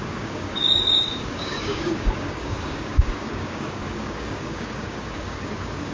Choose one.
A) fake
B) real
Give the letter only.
A